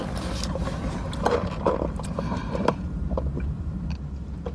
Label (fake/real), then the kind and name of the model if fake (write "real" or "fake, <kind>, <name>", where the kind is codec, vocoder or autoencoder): fake, vocoder, BigVGAN v2